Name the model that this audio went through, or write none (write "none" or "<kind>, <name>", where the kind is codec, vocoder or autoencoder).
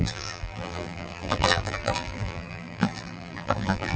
vocoder, BigVGAN v2